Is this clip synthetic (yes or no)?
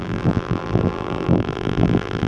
yes